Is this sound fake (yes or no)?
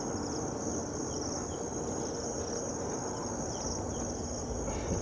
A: no